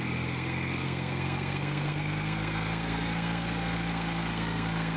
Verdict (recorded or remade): remade